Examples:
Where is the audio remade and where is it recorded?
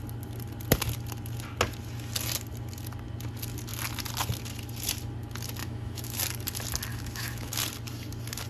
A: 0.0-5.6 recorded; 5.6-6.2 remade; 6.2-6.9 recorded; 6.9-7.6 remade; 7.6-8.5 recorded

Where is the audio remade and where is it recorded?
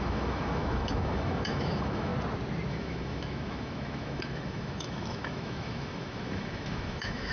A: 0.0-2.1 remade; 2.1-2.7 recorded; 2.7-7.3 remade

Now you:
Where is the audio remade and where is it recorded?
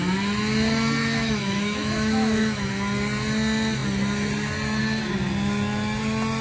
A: 0.0-1.0 recorded; 1.0-2.7 remade; 2.7-6.4 recorded